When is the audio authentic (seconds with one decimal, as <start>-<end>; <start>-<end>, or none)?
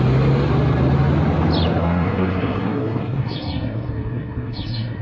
0.0-1.8